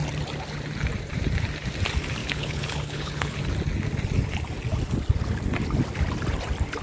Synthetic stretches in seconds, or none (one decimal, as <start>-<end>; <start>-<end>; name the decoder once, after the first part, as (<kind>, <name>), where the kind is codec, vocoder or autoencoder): 2.2-3.4 (codec, HILCodec)